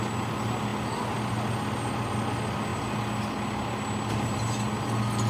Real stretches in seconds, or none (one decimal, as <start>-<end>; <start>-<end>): 0.0-5.3